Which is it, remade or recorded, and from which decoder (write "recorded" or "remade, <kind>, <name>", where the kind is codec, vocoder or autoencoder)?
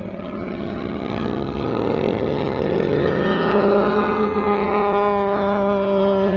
remade, vocoder, HiFi-GAN